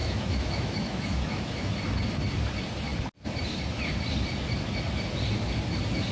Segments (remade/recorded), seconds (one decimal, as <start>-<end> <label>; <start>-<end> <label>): 0.0-1.7 remade; 1.7-6.1 recorded